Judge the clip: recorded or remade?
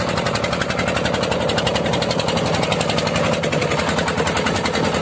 recorded